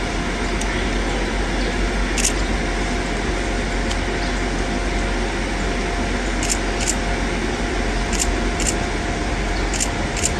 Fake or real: real